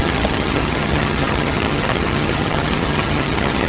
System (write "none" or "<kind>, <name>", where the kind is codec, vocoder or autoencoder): vocoder, HiFi-GAN